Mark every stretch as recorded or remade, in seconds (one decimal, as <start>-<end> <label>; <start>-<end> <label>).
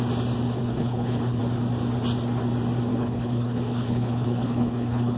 0.0-0.6 recorded; 0.6-1.4 remade; 1.4-2.9 recorded; 2.9-5.2 remade